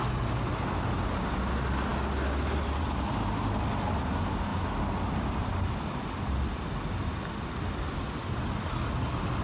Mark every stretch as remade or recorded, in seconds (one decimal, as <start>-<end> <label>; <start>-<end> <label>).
0.0-9.4 recorded